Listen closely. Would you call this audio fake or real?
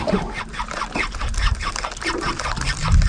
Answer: real